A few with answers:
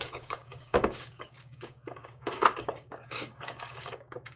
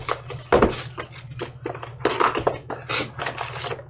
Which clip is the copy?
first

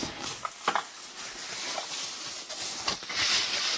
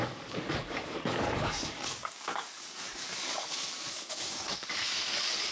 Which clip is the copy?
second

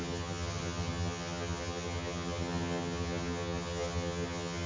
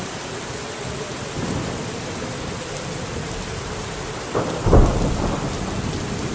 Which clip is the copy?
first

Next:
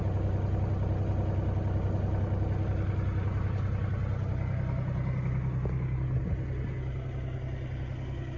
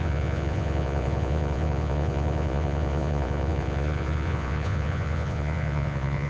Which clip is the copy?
second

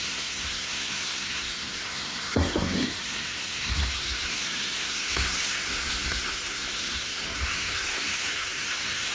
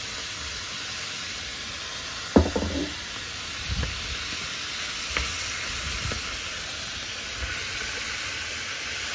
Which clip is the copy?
first